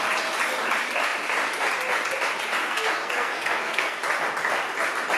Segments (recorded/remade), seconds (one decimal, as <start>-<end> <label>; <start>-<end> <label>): 0.0-2.6 recorded; 2.6-4.0 remade; 4.0-5.2 recorded